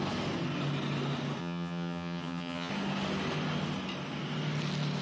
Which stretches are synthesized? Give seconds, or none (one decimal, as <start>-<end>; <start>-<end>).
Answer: 1.4-2.7